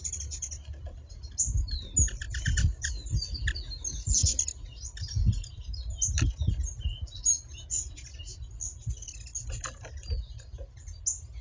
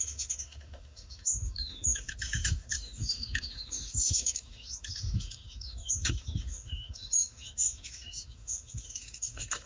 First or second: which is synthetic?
second